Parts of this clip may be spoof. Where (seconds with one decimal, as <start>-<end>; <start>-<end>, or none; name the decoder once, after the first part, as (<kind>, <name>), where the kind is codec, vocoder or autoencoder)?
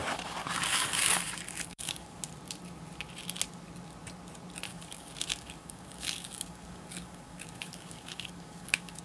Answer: 0.4-2.2 (codec, DAC); 4.7-9.0